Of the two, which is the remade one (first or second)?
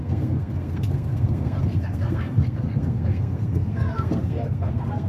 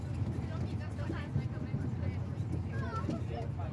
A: first